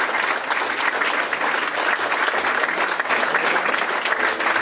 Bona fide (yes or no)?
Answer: yes